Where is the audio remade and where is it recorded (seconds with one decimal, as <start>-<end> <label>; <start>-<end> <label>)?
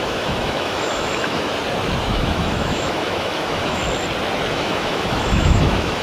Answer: 0.0-1.5 remade; 1.5-2.1 recorded; 2.1-3.8 remade; 3.8-4.5 recorded; 4.5-6.0 remade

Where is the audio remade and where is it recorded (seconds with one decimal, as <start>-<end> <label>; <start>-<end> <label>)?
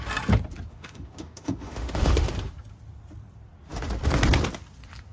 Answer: 0.0-0.7 recorded; 0.7-2.3 remade; 2.3-5.1 recorded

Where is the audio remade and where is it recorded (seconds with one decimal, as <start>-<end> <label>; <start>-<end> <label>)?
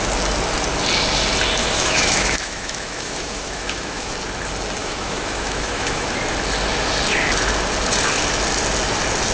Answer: 0.0-1.6 recorded; 1.6-4.1 remade; 4.1-4.8 recorded; 4.8-6.1 remade; 6.1-9.3 recorded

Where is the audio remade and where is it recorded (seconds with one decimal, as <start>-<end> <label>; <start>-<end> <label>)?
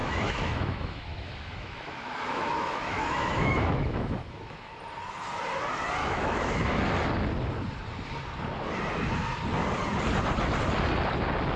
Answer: 0.0-4.8 remade; 4.8-6.0 recorded; 6.0-6.8 remade; 6.8-11.6 recorded